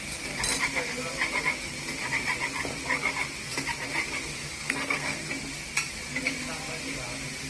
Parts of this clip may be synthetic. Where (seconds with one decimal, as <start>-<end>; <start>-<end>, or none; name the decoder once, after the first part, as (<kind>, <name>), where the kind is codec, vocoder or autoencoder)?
4.4-5.3 (codec, SNAC)